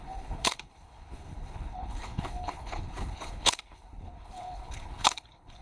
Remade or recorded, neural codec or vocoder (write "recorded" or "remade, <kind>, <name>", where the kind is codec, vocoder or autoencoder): remade, codec, HILCodec